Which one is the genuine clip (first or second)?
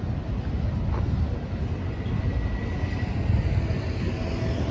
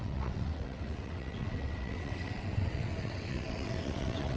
first